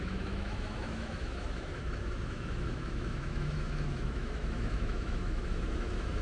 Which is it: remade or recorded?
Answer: remade